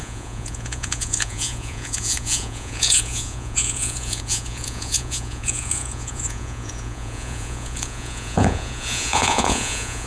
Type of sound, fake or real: fake